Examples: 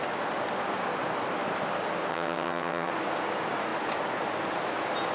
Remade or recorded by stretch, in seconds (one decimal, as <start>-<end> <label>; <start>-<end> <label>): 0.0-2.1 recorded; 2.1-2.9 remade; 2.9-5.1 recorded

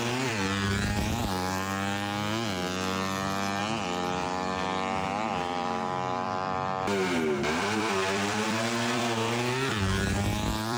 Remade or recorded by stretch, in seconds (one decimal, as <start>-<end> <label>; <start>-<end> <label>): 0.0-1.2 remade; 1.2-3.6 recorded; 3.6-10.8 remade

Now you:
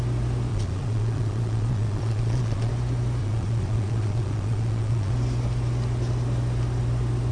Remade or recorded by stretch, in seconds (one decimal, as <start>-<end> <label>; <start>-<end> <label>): 0.0-0.5 recorded; 0.5-2.7 remade; 2.7-3.2 recorded; 3.2-5.1 remade; 5.1-7.3 recorded

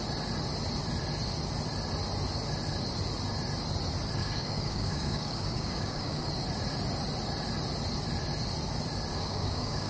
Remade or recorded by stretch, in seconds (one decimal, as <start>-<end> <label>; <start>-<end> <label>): 0.0-4.2 recorded; 4.2-6.3 remade; 6.3-9.1 recorded; 9.1-9.9 remade

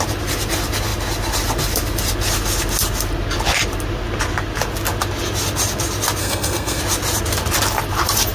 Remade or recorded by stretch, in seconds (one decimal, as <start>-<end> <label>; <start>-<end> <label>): 0.0-6.2 recorded; 6.2-6.8 remade; 6.8-8.3 recorded

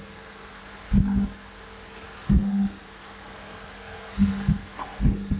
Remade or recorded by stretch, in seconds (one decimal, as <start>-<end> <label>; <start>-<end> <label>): 0.0-0.6 remade; 0.6-1.9 recorded; 1.9-5.4 remade

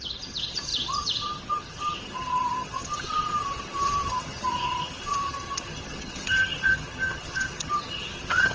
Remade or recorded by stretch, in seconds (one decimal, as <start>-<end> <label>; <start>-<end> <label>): 0.0-8.5 remade

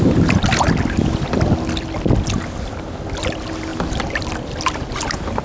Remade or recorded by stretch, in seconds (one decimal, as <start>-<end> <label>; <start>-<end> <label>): 0.0-5.4 recorded